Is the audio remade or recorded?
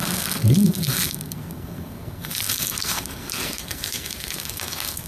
remade